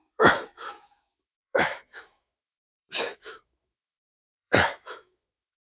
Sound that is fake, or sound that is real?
fake